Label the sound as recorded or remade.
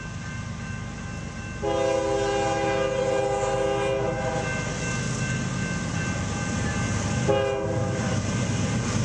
recorded